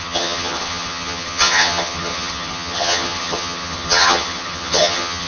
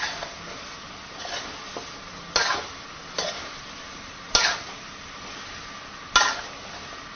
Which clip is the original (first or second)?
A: second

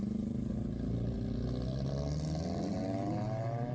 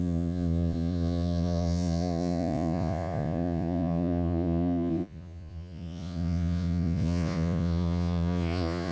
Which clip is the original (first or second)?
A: first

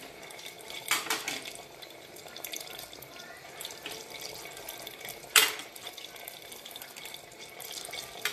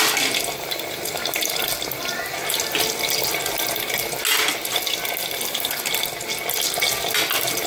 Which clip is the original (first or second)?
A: second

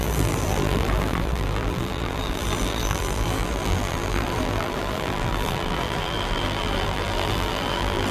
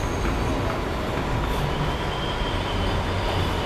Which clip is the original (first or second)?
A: second